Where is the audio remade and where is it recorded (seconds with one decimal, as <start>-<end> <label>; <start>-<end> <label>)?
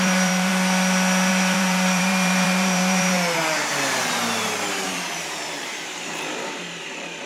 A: 0.0-0.5 remade; 0.5-1.3 recorded; 1.3-7.3 remade